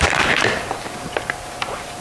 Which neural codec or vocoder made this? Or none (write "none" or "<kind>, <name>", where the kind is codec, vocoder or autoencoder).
vocoder, BigVGAN v2